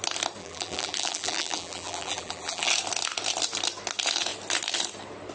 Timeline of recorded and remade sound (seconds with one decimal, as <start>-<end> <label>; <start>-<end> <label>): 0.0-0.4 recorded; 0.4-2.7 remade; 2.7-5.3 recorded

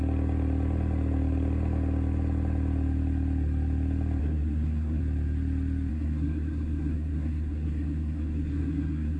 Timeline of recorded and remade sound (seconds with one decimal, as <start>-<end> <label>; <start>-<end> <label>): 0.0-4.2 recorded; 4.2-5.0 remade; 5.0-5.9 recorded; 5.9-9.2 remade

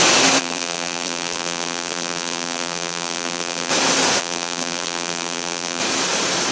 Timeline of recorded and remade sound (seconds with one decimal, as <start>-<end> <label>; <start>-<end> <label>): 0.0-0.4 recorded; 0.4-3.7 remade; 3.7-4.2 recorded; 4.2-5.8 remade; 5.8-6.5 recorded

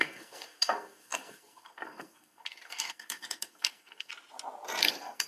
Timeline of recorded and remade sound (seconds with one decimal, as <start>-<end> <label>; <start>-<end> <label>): 0.0-4.1 remade; 4.1-4.8 recorded; 4.8-5.3 remade

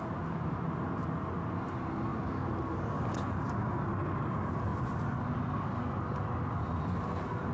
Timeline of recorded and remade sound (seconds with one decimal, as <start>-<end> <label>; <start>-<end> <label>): 0.0-4.7 recorded; 4.7-5.8 remade; 5.8-7.5 recorded

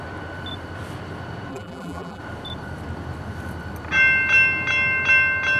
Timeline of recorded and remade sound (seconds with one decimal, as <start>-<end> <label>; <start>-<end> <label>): 0.0-1.5 recorded; 1.5-2.2 remade; 2.2-5.6 recorded

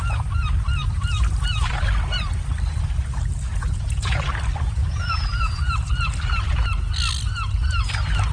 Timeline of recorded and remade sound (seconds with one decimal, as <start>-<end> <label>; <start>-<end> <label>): 0.0-3.5 recorded; 3.5-4.3 remade; 4.3-4.8 recorded; 4.8-5.5 remade; 5.5-8.3 recorded